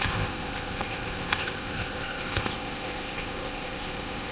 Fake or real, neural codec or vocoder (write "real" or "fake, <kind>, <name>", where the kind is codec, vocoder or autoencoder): fake, codec, ZipCodec